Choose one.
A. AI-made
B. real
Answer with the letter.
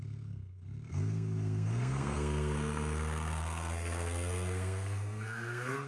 A